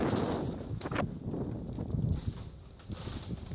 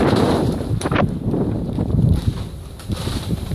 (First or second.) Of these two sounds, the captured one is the first